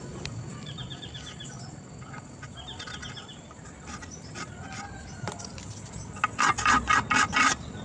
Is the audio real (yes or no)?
yes